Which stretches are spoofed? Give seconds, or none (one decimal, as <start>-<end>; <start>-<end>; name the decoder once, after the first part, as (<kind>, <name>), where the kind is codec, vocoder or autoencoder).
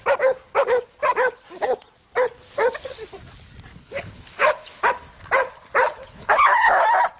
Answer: 3.7-4.8 (codec, HILCodec); 6.0-6.8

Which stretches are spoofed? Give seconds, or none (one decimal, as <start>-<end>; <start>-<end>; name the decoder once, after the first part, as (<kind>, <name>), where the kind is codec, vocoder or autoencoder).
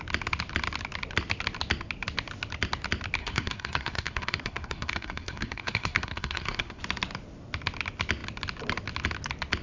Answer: 3.2-6.8 (codec, SNAC)